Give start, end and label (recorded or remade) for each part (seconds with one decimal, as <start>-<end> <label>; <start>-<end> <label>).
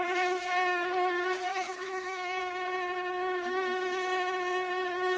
0.0-1.5 recorded; 1.5-2.4 remade; 2.4-5.2 recorded